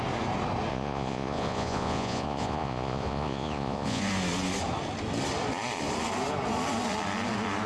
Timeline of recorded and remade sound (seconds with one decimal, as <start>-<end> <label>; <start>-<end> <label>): 0.0-0.7 recorded; 0.7-4.0 remade; 4.0-7.7 recorded